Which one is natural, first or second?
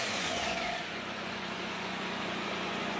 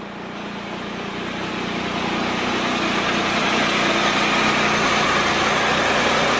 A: second